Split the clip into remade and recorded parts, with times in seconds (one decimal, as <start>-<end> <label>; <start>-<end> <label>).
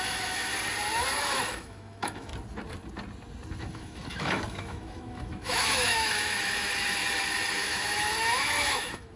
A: 0.0-0.5 remade; 0.5-1.2 recorded; 1.2-2.3 remade; 2.3-3.6 recorded; 3.6-7.0 remade; 7.0-7.5 recorded; 7.5-9.2 remade